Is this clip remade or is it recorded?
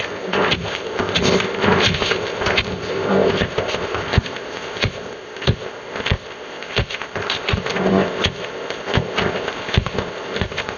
remade